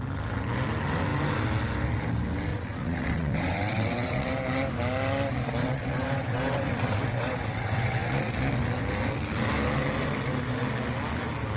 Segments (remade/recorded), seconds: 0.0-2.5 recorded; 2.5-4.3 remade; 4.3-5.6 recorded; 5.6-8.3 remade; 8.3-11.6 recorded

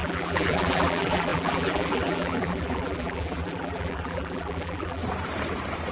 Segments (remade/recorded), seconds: 0.0-5.0 remade; 5.0-5.9 recorded

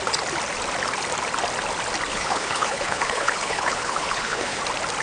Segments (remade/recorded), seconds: 0.0-2.1 recorded; 2.1-4.6 remade; 4.6-5.0 recorded

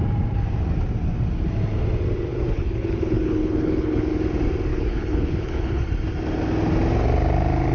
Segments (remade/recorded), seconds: 0.0-2.3 recorded; 2.3-4.1 remade; 4.1-4.7 recorded; 4.7-5.8 remade; 5.8-7.7 recorded

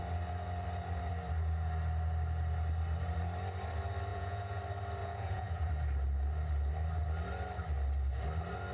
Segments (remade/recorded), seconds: 0.0-4.1 recorded; 4.1-4.6 remade; 4.6-5.0 recorded; 5.0-5.7 remade; 5.7-8.7 recorded

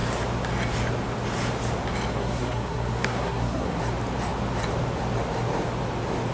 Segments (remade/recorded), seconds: 0.0-2.1 recorded; 2.1-3.8 remade; 3.8-6.3 recorded

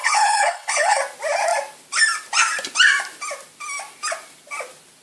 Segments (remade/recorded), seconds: 0.0-1.0 remade; 1.0-5.0 recorded

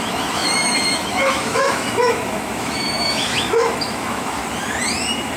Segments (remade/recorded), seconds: 0.0-4.4 remade; 4.4-5.4 recorded